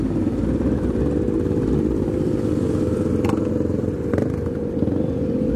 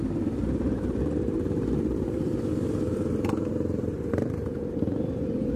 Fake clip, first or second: second